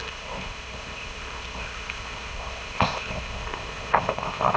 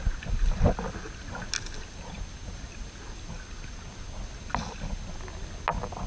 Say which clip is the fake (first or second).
first